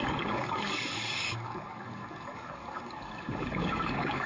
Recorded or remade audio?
remade